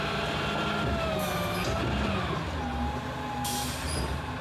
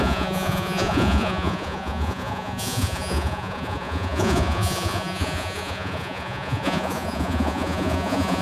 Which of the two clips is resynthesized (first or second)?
second